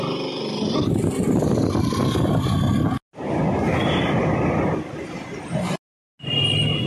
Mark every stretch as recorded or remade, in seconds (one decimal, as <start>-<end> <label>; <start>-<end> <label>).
0.0-6.9 recorded